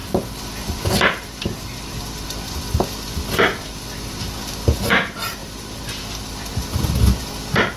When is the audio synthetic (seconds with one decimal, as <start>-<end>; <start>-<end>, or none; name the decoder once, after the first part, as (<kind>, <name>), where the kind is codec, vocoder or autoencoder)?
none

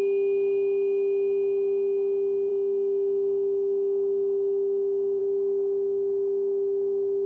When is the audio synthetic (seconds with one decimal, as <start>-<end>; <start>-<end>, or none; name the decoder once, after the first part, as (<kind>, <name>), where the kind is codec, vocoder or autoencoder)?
2.5-5.2 (autoencoder, DAC-VAE)

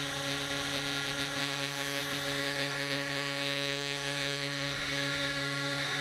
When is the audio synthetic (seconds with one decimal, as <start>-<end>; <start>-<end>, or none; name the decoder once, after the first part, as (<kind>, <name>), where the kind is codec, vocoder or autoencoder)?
1.4-2.0 (autoencoder, DAC-VAE); 2.4-6.0